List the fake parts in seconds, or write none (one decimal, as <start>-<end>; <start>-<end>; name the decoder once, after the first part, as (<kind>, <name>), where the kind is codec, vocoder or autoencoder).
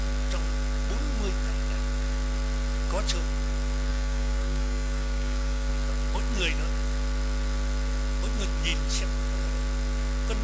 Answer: 3.9-5.7 (codec, DAC)